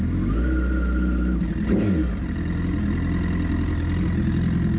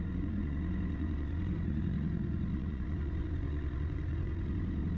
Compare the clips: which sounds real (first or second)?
first